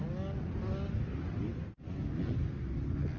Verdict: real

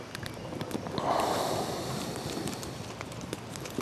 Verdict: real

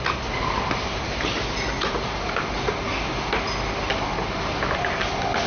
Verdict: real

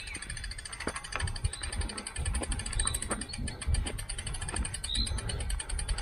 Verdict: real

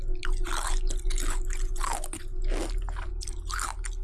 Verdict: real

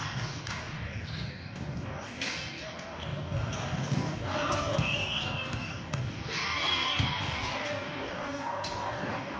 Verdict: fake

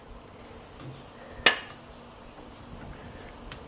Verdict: real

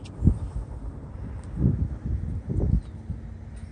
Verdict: real